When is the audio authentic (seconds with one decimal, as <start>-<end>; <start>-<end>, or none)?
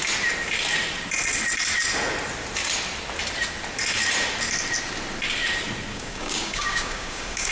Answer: 0.0-5.9